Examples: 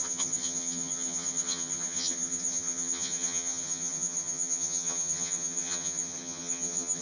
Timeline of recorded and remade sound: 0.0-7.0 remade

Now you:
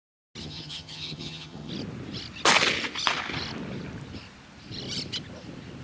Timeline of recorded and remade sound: 0.0-0.4 recorded; 0.4-1.7 remade; 1.7-5.8 recorded